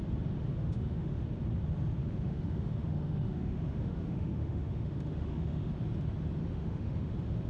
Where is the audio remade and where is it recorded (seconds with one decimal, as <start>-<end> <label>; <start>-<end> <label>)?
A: 0.0-0.5 recorded; 0.5-1.2 remade; 1.2-2.0 recorded; 2.0-5.7 remade; 5.7-6.4 recorded; 6.4-7.1 remade; 7.1-7.5 recorded